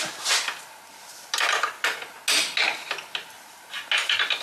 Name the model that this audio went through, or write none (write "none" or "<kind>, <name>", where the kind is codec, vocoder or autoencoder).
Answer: none